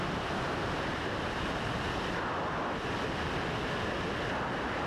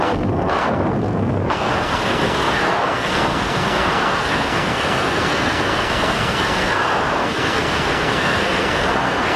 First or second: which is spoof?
second